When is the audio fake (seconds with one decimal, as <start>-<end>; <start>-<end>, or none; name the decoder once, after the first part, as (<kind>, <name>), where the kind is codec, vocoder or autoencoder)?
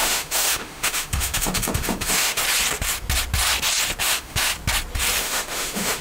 0.0-2.4 (autoencoder, DAC-VAE); 4.0-4.5; 5.2-6.0